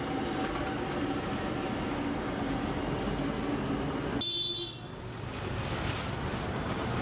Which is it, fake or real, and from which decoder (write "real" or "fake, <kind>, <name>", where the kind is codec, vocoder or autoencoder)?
real